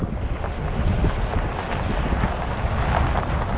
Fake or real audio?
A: real